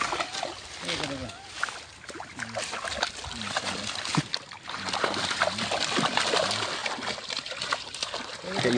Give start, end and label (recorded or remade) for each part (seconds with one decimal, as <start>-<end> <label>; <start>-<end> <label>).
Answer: 0.0-8.8 recorded